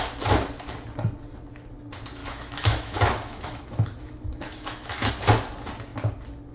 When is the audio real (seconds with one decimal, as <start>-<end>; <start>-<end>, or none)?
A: 0.0-2.2; 5.1-6.5